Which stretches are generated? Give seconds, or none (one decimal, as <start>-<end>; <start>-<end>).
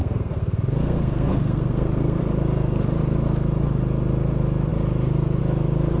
0.0-2.2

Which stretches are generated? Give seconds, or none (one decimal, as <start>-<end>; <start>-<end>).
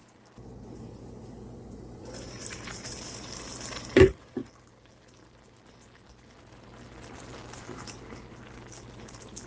none